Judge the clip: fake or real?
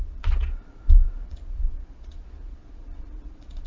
fake